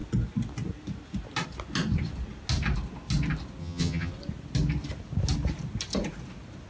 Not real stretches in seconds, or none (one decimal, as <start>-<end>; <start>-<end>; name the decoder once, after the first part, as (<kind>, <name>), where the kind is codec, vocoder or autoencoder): 3.6-4.1 (vocoder, HiFi-GAN)